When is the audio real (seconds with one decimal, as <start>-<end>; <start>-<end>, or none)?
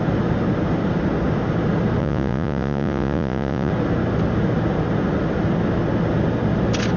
0.0-2.0; 3.7-7.0